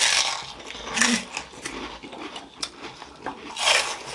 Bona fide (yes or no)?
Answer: yes